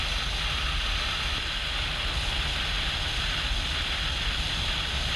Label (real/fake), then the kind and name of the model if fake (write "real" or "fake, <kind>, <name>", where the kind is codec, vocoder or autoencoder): real